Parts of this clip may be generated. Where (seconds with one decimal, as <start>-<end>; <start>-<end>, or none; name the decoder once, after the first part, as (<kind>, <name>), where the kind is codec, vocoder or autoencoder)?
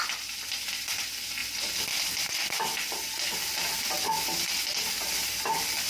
none